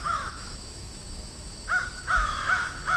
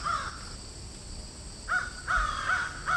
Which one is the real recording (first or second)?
second